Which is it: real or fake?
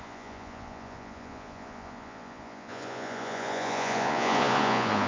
fake